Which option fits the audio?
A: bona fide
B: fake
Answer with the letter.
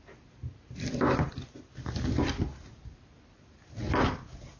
A